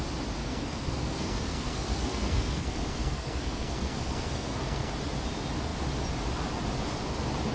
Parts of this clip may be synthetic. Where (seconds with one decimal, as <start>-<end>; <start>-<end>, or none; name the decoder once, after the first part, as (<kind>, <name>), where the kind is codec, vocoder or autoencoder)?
0.4-4.9 (codec, SNAC)